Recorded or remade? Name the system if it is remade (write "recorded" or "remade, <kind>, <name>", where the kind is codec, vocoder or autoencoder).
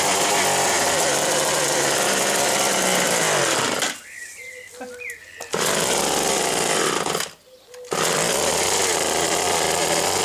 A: recorded